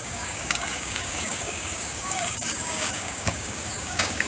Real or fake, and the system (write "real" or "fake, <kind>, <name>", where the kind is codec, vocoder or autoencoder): fake, codec, DAC